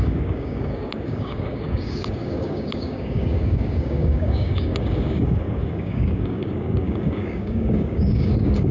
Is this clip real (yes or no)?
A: no